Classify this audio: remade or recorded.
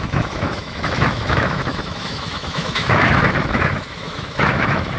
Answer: remade